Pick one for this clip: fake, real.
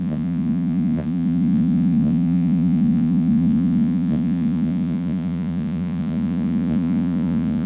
fake